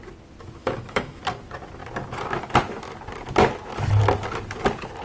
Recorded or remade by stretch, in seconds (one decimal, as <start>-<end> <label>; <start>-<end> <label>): 0.0-0.6 recorded; 0.6-1.2 remade; 1.2-5.0 recorded